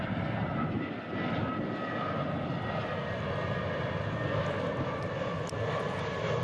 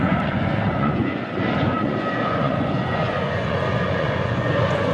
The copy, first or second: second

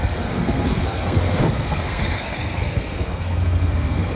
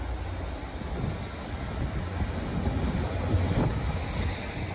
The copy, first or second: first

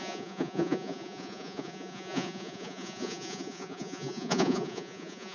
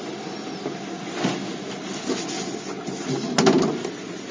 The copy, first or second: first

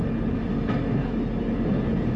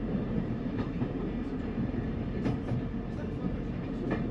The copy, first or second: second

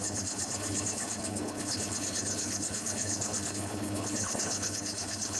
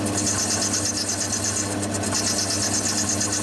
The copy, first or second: first